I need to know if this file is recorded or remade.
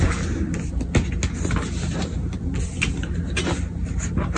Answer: recorded